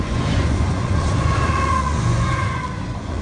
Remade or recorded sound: remade